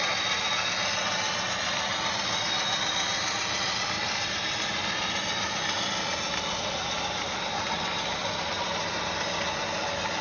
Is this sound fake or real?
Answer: real